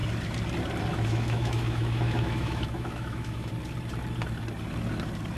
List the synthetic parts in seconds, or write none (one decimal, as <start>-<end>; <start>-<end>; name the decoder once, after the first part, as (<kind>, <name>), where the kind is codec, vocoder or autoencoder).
0.9-3.5 (autoencoder, DAC-VAE)